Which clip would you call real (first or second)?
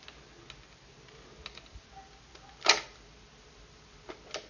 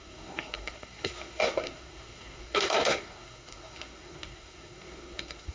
first